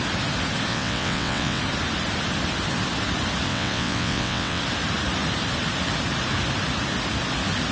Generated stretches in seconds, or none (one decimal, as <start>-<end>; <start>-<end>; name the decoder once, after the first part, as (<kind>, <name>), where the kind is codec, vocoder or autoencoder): 0.7-1.6 (vocoder, WaveNeXt); 3.5-4.6